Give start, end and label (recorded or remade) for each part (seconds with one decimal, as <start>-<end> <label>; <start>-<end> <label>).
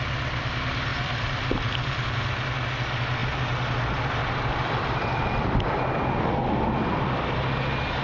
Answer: 0.0-0.9 recorded; 0.9-2.1 remade; 2.1-4.2 recorded; 4.2-5.7 remade; 5.7-8.0 recorded